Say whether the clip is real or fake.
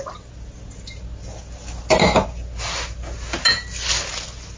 real